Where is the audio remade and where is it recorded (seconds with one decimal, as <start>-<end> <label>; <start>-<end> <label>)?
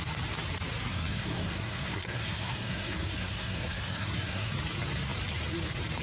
0.0-0.9 recorded; 0.9-4.5 remade; 4.5-6.0 recorded